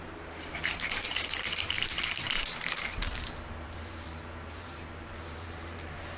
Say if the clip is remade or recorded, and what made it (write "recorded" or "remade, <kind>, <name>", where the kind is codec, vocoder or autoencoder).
remade, vocoder, BigVGAN v2